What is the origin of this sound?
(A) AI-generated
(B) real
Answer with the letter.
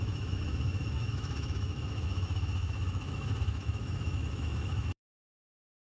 A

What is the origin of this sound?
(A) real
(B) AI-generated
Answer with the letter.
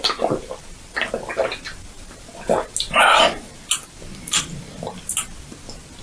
A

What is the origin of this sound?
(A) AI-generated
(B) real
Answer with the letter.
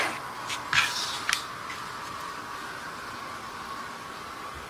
B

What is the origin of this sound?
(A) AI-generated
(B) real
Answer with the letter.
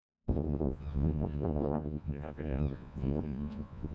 A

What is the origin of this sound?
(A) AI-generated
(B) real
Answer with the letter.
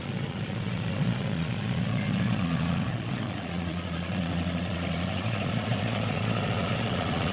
A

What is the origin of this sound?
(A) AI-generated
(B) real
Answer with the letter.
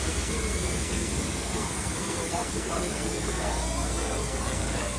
A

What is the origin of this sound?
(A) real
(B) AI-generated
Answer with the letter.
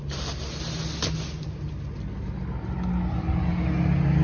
A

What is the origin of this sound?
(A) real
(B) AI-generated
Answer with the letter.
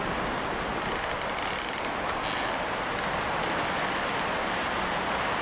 A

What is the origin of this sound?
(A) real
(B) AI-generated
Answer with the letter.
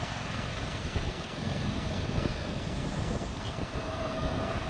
B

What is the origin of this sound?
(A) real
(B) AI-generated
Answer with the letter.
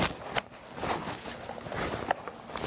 A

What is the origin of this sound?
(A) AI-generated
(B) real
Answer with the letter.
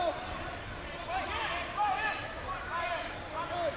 A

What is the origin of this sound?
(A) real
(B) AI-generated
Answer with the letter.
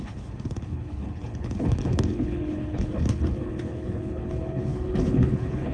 B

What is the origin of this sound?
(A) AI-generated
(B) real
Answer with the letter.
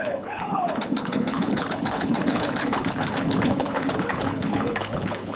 A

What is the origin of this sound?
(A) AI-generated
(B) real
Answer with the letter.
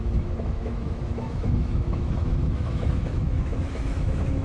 A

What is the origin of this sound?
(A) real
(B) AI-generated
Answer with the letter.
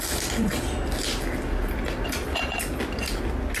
A